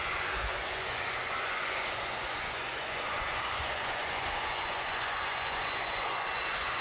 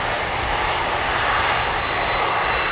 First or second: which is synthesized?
first